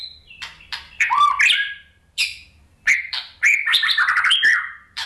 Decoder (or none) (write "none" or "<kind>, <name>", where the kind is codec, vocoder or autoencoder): vocoder, BigVGAN v2